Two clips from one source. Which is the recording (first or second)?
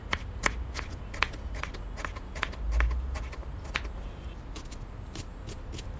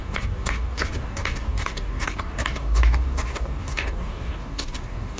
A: first